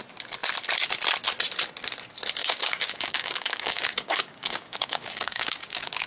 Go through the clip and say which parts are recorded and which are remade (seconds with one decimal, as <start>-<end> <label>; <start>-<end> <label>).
0.0-2.4 recorded; 2.4-6.1 remade